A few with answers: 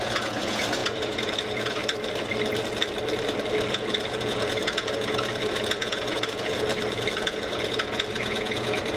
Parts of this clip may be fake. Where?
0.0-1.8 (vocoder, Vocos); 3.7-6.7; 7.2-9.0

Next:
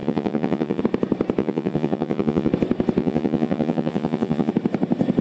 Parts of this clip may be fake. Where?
0.0-0.8 (vocoder, Vocos); 1.4-2.5; 3.0-4.5

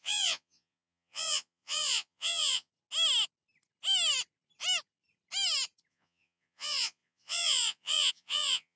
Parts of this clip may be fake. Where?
0.0-2.7 (vocoder, Vocos); 5.9-8.8